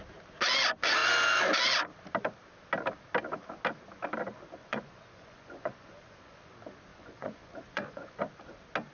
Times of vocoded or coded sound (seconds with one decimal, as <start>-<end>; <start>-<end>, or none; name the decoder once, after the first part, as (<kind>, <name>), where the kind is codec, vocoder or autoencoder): 4.6-6.5 (vocoder, Vocos); 6.9-8.2